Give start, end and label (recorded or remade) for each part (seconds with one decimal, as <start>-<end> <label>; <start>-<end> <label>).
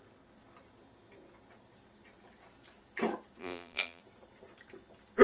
0.0-3.4 recorded; 3.4-4.0 remade; 4.0-5.2 recorded